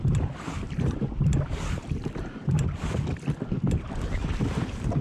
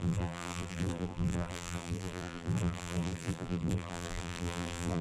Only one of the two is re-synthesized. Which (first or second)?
second